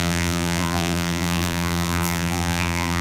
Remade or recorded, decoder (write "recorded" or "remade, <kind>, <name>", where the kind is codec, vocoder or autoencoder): remade, vocoder, BigVGAN v2